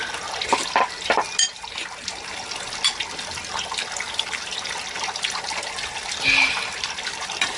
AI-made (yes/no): no